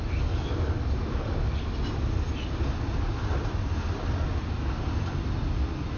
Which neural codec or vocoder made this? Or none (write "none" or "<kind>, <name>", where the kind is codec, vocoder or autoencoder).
none